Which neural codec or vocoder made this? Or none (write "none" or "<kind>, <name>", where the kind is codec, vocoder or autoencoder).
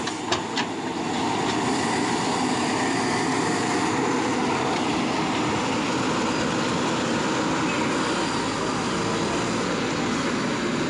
none